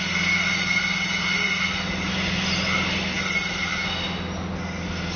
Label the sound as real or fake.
real